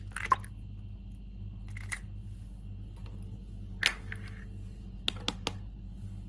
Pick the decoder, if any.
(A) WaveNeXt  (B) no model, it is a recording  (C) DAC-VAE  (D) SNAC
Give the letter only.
B